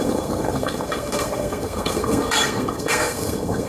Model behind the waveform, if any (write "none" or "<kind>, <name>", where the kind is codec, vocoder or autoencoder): codec, SNAC